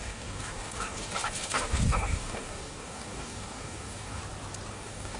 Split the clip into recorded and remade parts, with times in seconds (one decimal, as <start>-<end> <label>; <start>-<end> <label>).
0.0-4.2 remade; 4.2-4.7 recorded; 4.7-5.2 remade